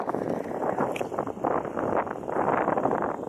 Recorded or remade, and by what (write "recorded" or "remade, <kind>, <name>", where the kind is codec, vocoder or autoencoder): recorded